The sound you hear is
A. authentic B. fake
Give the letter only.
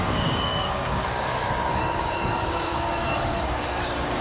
B